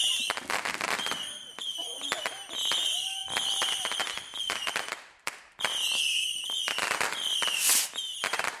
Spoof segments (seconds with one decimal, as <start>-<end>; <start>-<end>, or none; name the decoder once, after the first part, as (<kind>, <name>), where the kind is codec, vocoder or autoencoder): 0.0-1.8 (vocoder, BigVGAN v2); 2.6-8.6